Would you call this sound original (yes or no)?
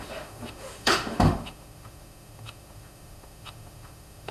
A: no